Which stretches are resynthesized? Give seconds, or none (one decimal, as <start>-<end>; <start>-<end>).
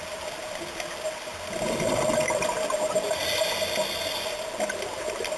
none